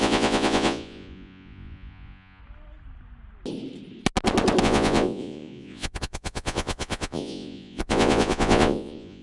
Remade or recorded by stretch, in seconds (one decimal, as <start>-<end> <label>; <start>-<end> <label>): 0.0-2.4 remade; 2.4-4.6 recorded; 4.6-9.2 remade